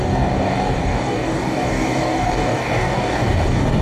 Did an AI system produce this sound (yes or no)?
yes